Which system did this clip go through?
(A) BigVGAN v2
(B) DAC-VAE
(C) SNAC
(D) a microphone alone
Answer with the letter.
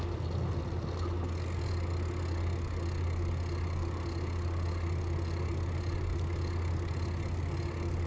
D